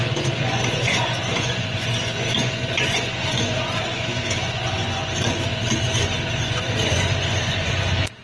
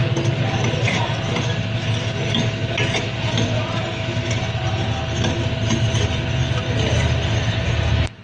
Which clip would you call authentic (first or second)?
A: second